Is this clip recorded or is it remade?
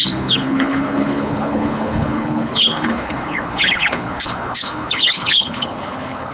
remade